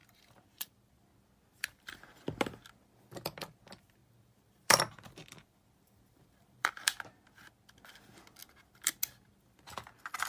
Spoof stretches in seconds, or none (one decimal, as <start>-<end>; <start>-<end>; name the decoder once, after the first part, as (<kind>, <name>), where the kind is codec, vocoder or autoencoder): 0.0-0.9 (vocoder, BigVGAN v2); 4.0-7.0